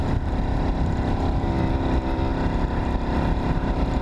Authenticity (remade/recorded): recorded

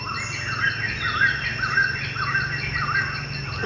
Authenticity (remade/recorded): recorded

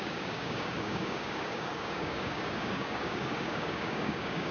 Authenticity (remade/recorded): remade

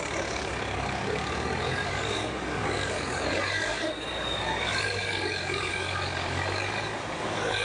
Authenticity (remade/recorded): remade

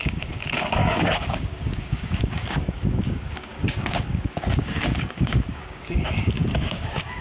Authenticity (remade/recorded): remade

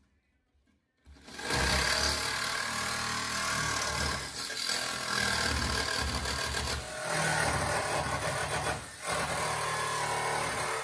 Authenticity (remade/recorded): recorded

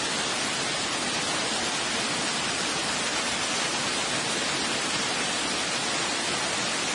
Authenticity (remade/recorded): recorded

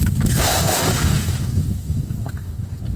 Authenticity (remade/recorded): remade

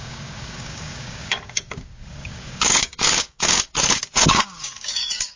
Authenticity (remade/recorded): remade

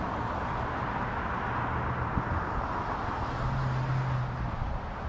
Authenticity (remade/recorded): recorded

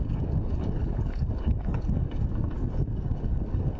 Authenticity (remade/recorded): remade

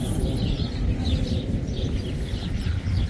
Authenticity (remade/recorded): recorded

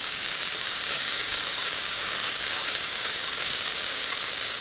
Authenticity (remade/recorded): remade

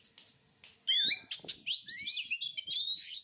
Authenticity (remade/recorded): recorded